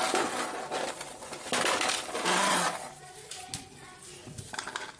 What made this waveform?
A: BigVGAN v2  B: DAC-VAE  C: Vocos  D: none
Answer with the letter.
D